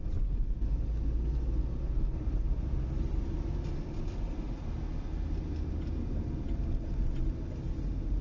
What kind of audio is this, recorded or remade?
recorded